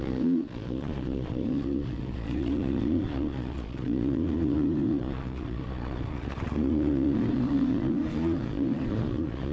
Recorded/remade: remade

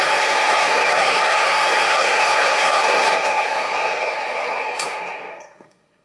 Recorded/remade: remade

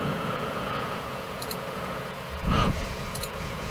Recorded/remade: remade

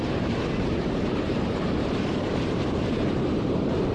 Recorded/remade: remade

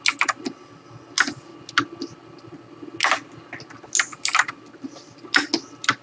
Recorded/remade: recorded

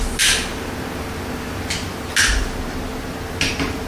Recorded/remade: recorded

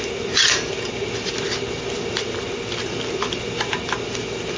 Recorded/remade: recorded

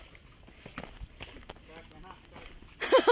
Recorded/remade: recorded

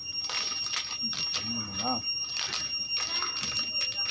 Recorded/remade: recorded